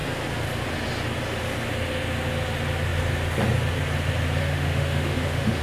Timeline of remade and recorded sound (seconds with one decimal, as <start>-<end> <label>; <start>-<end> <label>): 0.0-4.4 recorded; 4.4-5.6 remade